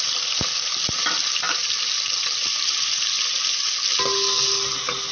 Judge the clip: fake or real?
real